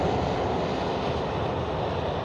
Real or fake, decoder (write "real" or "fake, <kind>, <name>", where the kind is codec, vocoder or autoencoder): real